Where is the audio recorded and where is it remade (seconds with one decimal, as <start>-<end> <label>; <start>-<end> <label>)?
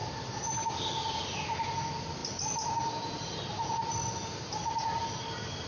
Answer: 0.0-5.7 recorded